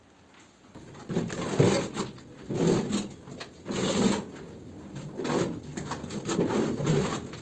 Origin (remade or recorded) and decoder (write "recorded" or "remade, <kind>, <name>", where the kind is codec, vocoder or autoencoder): recorded